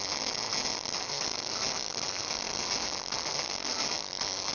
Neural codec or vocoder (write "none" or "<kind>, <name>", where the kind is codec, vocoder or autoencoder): none